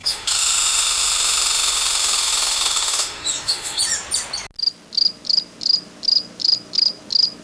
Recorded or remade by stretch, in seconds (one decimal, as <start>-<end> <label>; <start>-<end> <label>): 0.0-3.8 remade; 3.8-7.4 recorded